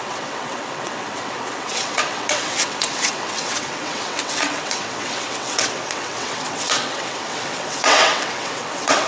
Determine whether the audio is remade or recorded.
remade